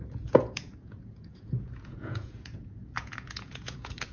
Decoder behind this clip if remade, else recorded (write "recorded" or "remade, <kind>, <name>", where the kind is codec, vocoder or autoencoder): remade, vocoder, Vocos